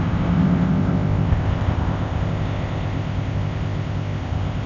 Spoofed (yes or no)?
yes